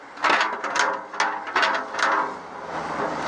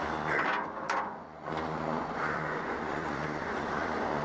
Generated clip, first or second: second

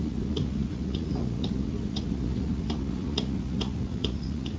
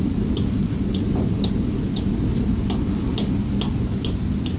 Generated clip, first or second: first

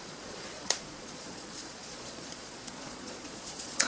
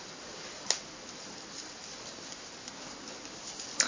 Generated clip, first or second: first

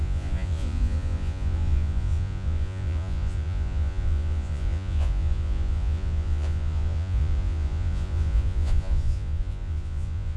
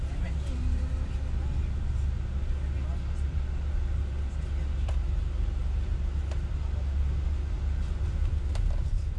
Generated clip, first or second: first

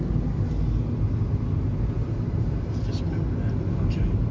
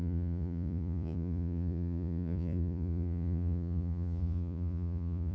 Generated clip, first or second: second